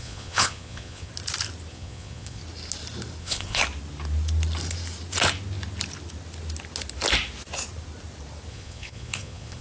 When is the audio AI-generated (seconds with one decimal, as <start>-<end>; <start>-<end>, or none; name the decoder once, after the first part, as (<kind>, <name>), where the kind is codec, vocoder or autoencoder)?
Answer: 0.0-1.1 (vocoder, Vocos); 1.7-2.4; 3.2-3.6; 8.5-9.6

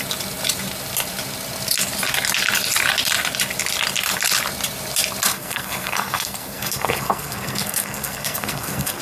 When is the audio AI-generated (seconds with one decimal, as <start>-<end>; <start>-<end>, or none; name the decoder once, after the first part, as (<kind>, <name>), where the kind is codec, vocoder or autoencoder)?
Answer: 5.3-9.0 (codec, SNAC)

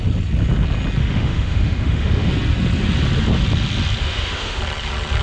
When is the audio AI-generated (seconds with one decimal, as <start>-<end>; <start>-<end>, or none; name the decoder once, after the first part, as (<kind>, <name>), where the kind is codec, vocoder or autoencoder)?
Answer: 1.0-2.3 (autoencoder, DAC-VAE); 4.0-4.6

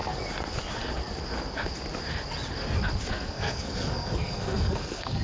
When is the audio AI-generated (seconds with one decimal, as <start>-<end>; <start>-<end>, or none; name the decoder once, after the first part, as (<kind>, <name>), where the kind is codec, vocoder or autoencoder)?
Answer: 3.1-5.2 (codec, SNAC)

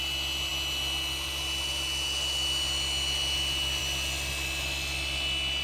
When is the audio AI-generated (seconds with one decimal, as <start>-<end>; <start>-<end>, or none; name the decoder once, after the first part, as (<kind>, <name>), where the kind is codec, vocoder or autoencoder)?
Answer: none

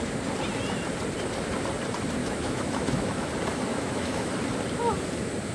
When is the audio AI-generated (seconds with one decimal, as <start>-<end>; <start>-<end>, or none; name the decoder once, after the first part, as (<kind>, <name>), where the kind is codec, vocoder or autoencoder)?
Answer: 2.2-3.3 (autoencoder, DAC-VAE); 3.7-4.3

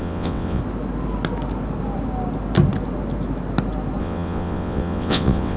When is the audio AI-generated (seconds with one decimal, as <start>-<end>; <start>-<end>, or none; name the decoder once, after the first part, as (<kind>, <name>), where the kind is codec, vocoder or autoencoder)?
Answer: 0.0-0.6 (vocoder, WaveNeXt); 4.0-5.6

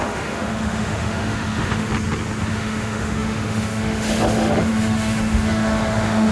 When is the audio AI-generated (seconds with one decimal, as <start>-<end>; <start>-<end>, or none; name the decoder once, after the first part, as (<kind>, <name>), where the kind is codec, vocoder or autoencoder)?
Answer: 0.0-1.9 (autoencoder, DAC-VAE); 2.5-6.3